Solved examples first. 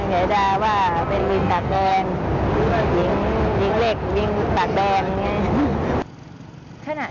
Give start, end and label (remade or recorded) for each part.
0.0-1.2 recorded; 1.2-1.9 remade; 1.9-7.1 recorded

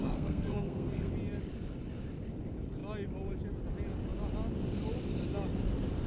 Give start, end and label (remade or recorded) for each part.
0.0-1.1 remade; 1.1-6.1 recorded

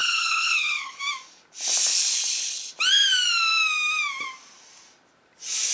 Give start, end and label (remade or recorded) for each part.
0.0-1.0 remade; 1.0-1.9 recorded; 1.9-2.7 remade; 2.7-5.7 recorded

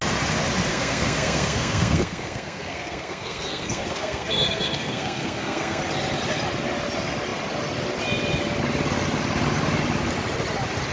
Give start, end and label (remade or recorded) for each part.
0.0-0.7 recorded; 0.7-5.8 remade; 5.8-10.9 recorded

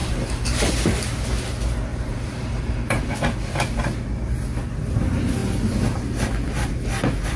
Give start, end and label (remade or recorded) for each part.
0.0-0.7 remade; 0.7-1.9 recorded; 1.9-3.0 remade; 3.0-7.4 recorded

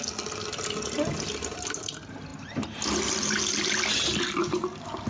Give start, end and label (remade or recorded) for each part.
0.0-4.4 recorded; 4.4-5.1 remade

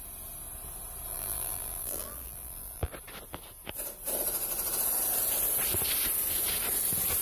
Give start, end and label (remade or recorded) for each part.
0.0-1.1 recorded; 1.1-2.9 remade; 2.9-7.2 recorded